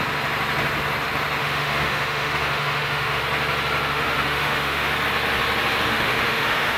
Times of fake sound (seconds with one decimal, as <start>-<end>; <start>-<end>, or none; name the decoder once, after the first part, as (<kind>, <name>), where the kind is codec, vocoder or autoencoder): 1.4-3.2 (autoencoder, DAC-VAE); 3.9-4.9; 5.9-6.8